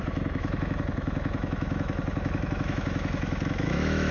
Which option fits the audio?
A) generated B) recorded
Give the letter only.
A